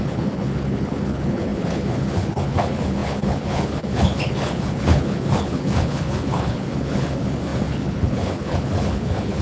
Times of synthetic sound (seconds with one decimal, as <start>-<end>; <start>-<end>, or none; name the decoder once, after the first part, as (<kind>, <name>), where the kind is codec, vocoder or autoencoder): 0.0-9.4 (codec, HILCodec)